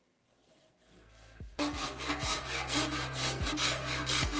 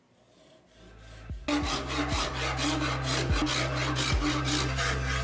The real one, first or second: second